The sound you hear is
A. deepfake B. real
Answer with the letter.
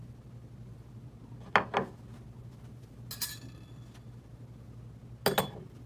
B